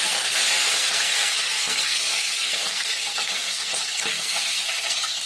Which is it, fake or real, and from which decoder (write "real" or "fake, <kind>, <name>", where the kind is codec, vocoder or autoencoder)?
fake, codec, SNAC